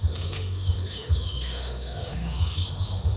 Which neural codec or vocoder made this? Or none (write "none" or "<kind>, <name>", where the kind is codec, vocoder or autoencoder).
autoencoder, DAC-VAE